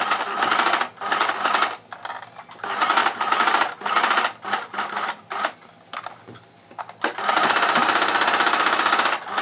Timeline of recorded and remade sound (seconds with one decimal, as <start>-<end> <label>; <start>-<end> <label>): 0.0-9.4 recorded